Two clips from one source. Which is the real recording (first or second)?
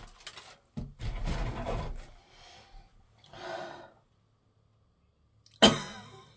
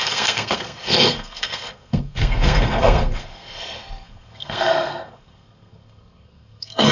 first